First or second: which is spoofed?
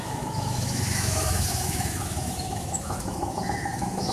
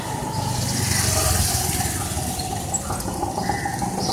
first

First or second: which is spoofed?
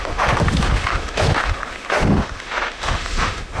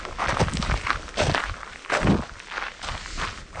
first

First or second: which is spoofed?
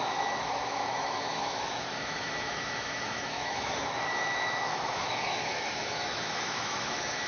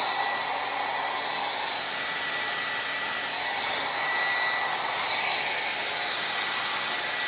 first